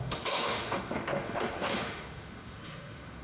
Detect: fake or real fake